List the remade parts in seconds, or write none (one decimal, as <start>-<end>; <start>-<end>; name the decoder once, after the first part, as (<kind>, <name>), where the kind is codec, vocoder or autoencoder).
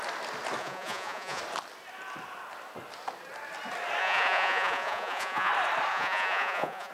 0.6-1.4 (vocoder, Vocos); 4.0-5.5; 5.9-6.9